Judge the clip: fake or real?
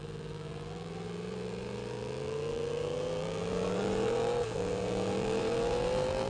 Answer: fake